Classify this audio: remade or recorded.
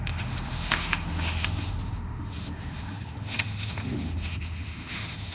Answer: remade